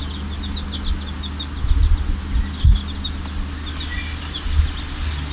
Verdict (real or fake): real